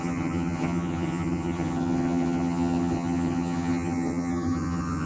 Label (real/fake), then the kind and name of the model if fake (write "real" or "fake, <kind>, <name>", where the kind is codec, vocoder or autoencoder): fake, vocoder, HiFi-GAN